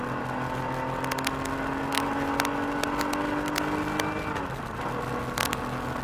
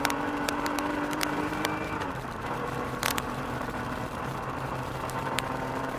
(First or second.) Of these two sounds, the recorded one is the first